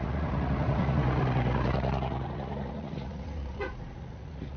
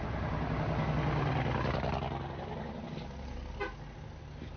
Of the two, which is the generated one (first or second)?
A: first